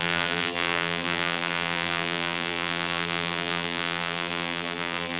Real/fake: fake